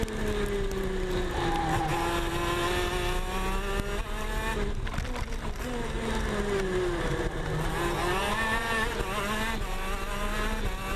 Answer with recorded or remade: recorded